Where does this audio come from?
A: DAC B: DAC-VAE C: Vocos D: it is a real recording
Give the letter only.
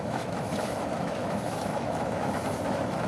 B